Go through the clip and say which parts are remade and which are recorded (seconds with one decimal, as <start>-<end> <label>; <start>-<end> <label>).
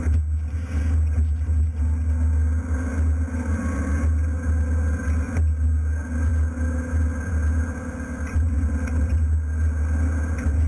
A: 0.0-10.7 recorded